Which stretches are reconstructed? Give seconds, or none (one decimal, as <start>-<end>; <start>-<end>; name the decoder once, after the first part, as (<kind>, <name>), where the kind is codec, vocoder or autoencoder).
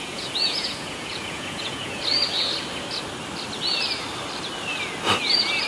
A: 0.0-2.0 (vocoder, Vocos)